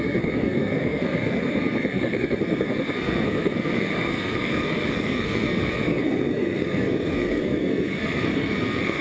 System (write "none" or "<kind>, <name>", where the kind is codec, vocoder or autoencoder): codec, SNAC